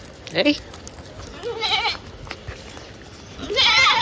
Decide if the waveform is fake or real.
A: real